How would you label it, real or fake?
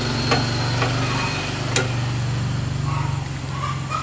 real